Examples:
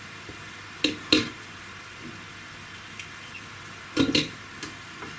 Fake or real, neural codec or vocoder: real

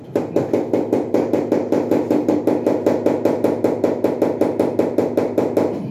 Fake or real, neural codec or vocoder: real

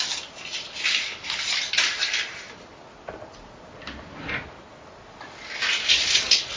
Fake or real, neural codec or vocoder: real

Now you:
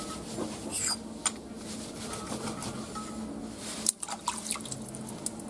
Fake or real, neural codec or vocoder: real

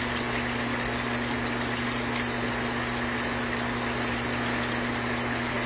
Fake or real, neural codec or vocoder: real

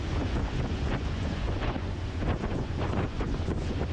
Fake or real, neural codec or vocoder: fake, vocoder, Vocos